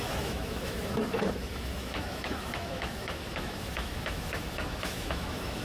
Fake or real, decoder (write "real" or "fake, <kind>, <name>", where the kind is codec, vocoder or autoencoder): fake, autoencoder, DAC-VAE